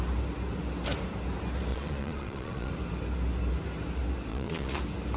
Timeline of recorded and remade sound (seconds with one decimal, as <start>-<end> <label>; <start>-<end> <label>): 0.0-1.7 recorded; 1.7-2.7 remade; 2.7-4.3 recorded; 4.3-4.8 remade; 4.8-5.2 recorded